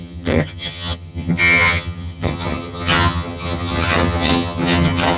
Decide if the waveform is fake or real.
fake